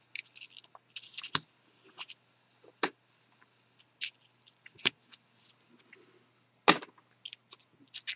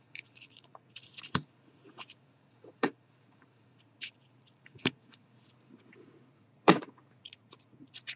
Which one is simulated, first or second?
second